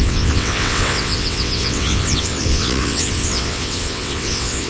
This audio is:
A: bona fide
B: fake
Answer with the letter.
B